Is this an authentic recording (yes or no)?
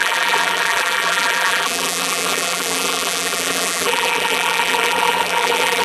no